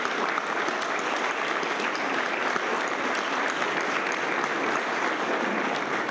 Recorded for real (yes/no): yes